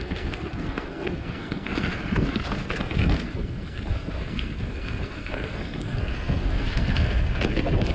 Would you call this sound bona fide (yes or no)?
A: no